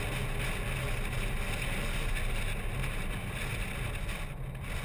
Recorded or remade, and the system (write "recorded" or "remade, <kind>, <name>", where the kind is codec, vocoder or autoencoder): recorded